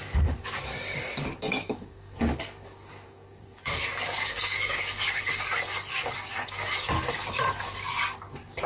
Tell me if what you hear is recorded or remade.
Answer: remade